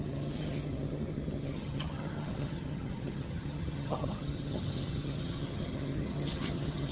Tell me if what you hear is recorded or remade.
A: remade